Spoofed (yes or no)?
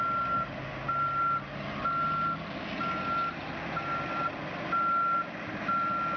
no